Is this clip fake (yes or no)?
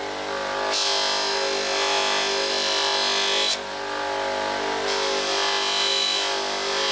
no